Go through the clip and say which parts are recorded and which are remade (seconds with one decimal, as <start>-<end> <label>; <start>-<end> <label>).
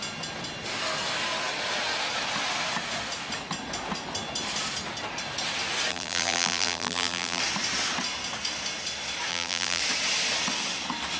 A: 0.0-5.9 recorded; 5.9-7.4 remade; 7.4-9.3 recorded; 9.3-9.8 remade; 9.8-11.2 recorded